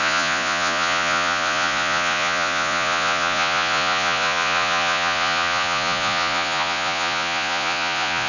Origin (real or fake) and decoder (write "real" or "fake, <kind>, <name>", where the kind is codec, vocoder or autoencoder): fake, vocoder, Vocos